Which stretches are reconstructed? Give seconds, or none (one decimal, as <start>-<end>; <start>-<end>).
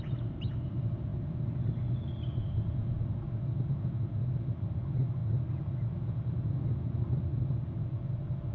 none